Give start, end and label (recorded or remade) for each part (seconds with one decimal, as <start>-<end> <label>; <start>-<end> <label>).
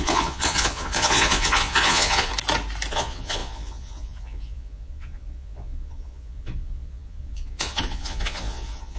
0.0-2.3 remade; 2.3-2.9 recorded; 2.9-9.0 remade